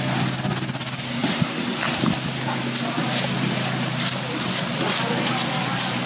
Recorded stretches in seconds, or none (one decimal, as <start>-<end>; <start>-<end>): 0.0-6.1